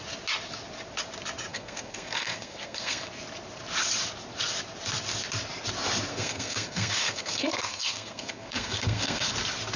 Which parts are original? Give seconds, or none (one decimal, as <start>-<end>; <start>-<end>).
0.0-1.5; 3.1-6.1; 9.3-9.8